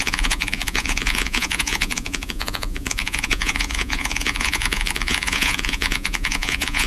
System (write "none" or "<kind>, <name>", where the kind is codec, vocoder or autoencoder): vocoder, Vocos